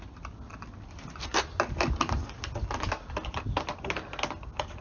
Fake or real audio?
real